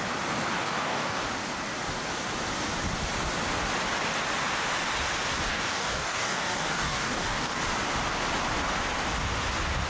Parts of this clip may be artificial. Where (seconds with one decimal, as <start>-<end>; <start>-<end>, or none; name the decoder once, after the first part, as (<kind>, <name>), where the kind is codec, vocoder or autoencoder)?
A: 0.6-1.2 (codec, DAC); 5.5-7.6